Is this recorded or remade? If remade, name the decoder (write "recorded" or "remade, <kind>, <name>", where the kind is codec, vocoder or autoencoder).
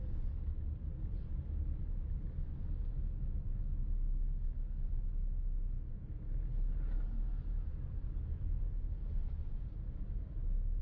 recorded